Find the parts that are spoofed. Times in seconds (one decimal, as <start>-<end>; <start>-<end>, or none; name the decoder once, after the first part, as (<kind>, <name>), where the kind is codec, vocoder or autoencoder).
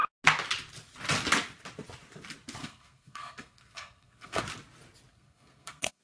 2.6-4.4 (codec, SNAC); 5.1-6.0